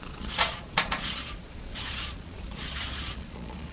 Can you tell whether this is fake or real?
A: fake